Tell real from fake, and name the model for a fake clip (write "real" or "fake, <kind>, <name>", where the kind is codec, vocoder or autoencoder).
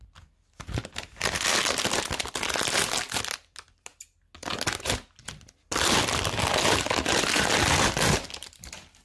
real